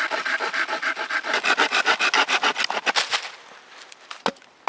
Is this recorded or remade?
recorded